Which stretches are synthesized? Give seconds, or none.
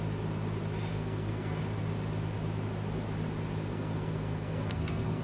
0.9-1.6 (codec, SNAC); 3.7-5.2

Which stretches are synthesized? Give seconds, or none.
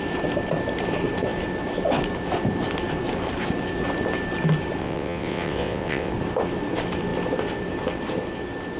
4.8-6.1 (vocoder, WaveNeXt)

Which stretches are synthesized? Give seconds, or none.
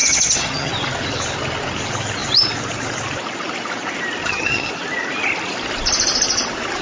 0.0-0.7 (vocoder, HiFi-GAN); 4.2-4.7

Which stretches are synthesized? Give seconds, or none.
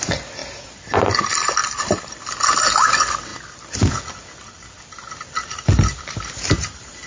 0.4-1.2 (vocoder, BigVGAN v2); 1.6-2.3; 3.3-4.8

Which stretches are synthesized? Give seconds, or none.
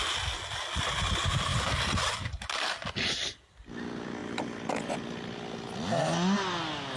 1.5-2.1 (vocoder, BigVGAN v2); 4.2-4.9